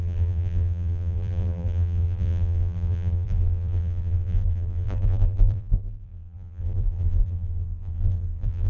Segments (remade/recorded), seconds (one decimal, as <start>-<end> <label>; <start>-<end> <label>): 0.0-8.7 remade